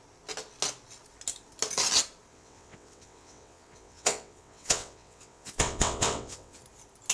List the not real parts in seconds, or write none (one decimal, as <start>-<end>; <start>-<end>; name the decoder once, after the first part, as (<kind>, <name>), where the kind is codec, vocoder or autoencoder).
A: 2.3-6.6 (vocoder, WaveNeXt)